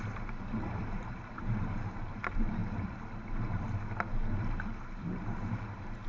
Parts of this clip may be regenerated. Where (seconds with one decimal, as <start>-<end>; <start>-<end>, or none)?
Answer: 0.0-2.6; 4.4-6.1